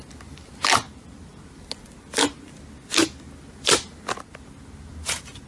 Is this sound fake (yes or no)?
no